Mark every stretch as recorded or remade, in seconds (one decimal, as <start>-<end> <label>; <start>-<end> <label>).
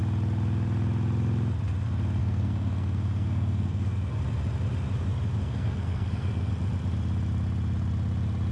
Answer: 0.0-2.2 recorded; 2.2-4.2 remade; 4.2-5.4 recorded; 5.4-6.5 remade; 6.5-8.5 recorded